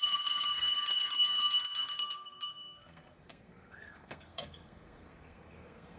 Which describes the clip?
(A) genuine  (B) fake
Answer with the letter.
B